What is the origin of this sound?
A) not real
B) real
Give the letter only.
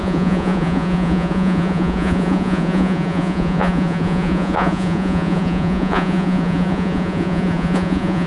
A